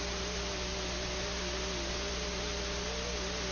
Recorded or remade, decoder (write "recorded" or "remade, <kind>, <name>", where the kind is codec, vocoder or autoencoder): recorded